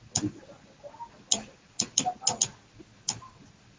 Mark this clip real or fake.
real